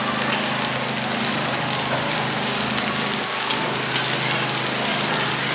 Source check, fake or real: real